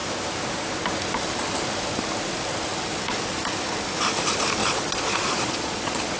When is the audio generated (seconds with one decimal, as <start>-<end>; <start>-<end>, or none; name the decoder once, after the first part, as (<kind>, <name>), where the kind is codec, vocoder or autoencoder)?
4.6-6.2 (vocoder, Vocos)